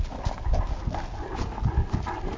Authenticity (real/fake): real